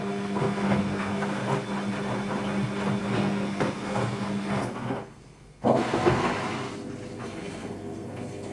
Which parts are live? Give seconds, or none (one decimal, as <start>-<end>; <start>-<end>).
1.4-3.0; 6.3-7.2